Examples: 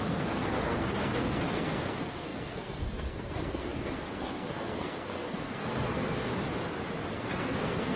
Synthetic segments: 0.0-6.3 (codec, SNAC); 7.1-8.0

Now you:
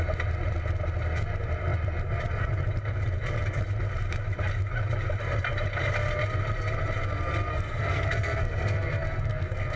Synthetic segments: 7.5-9.8 (codec, SNAC)

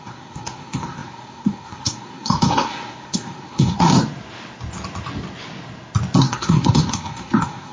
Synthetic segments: 0.0-3.9 (codec, SNAC); 6.2-7.7

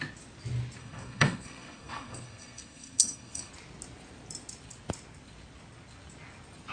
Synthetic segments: 0.8-3.5 (codec, SNAC)